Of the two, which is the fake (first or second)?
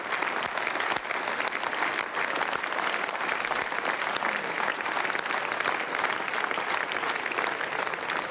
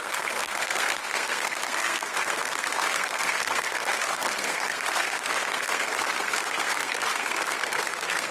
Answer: second